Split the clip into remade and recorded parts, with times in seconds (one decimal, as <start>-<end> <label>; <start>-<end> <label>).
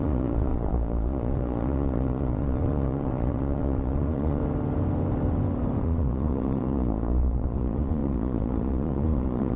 0.0-4.4 remade; 4.4-5.8 recorded; 5.8-9.6 remade